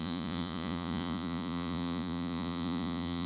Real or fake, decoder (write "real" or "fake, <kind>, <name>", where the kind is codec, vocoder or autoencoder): fake, vocoder, Vocos